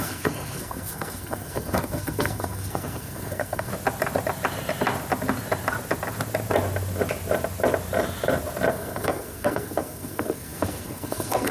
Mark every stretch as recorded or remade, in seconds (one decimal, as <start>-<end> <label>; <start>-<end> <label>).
0.0-3.7 remade; 3.7-8.7 recorded; 8.7-11.5 remade